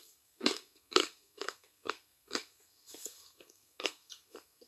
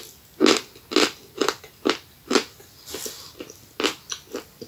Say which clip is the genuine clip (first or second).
second